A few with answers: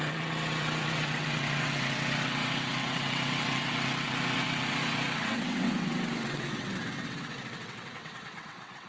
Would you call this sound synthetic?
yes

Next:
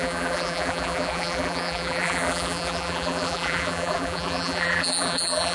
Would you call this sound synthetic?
yes